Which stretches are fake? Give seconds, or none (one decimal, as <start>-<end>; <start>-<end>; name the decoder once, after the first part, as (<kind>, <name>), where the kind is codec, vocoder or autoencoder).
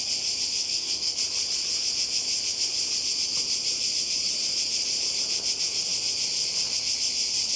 0.6-1.2 (codec, SNAC)